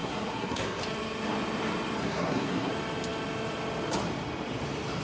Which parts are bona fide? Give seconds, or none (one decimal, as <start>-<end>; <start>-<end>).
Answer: 0.8-2.0; 2.7-5.0